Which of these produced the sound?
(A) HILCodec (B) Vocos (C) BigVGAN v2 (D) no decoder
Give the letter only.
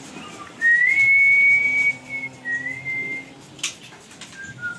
D